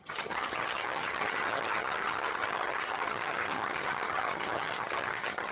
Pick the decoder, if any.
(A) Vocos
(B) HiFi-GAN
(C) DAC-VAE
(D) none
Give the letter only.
B